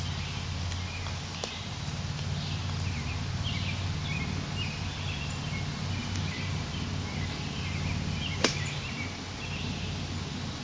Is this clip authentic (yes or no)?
yes